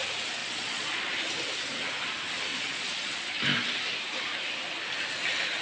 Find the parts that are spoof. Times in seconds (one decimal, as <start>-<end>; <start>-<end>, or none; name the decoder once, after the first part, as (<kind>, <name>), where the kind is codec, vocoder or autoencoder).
0.4-1.0 (vocoder, Vocos); 2.5-3.3